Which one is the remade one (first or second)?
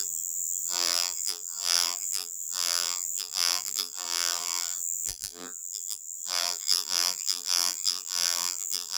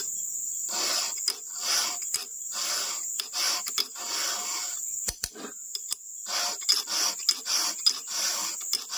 first